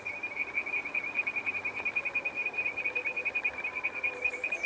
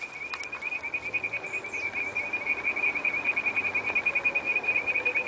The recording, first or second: second